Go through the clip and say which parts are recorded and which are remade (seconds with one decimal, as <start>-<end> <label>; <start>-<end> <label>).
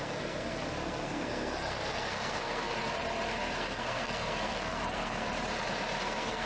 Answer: 0.0-2.7 remade; 2.7-3.3 recorded; 3.3-5.3 remade; 5.3-6.0 recorded; 6.0-6.5 remade